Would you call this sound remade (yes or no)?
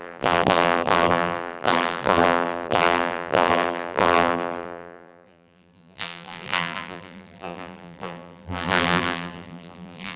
yes